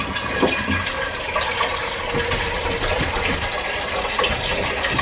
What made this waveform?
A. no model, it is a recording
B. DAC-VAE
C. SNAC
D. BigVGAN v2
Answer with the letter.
A